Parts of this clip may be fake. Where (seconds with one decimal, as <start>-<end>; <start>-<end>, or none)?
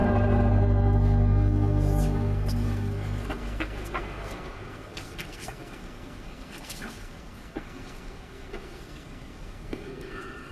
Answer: 0.5-10.5